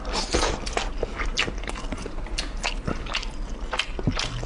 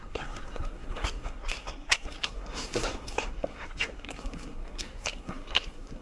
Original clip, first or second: first